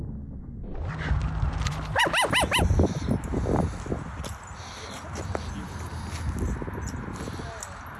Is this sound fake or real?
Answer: real